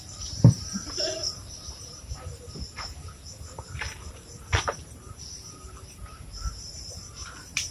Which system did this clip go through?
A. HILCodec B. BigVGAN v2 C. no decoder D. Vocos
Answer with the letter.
B